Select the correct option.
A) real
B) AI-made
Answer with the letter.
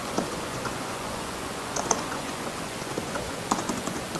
B